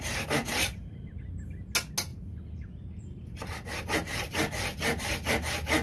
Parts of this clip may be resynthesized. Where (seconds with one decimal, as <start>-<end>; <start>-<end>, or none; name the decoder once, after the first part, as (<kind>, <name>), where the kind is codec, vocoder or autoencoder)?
none